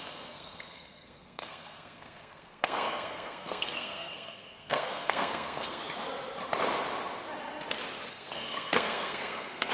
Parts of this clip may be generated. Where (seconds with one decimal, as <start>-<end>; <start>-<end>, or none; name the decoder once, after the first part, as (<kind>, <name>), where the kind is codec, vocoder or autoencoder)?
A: 0.0-5.8 (codec, SNAC); 8.1-9.7